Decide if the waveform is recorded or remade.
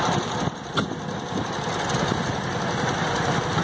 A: recorded